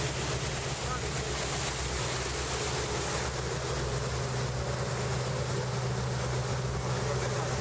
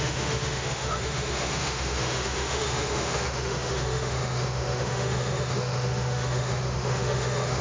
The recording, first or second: first